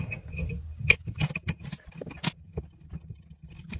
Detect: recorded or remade recorded